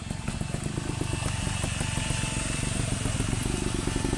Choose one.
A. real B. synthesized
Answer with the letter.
A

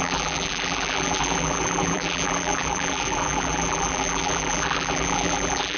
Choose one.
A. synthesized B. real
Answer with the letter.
A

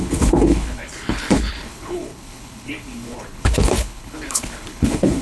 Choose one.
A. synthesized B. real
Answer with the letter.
A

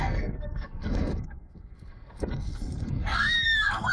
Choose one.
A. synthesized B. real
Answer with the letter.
A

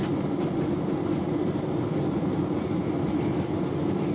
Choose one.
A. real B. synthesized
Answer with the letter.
A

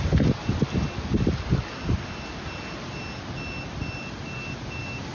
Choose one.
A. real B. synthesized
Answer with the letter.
A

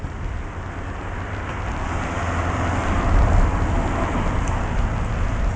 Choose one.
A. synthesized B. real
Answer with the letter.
B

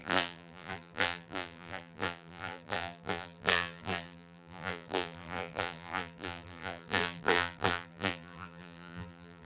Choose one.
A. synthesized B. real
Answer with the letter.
A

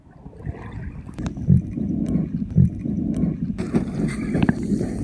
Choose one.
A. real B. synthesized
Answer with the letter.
A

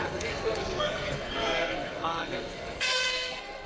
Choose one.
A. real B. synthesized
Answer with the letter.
B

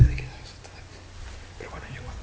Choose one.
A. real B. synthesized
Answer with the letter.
A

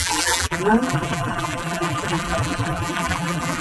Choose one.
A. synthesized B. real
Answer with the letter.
A